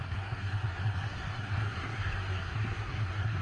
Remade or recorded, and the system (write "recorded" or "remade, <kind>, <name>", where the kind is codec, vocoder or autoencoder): remade, codec, SNAC